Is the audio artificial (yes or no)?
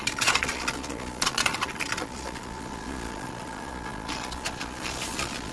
yes